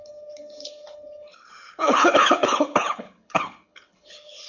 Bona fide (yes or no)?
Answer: no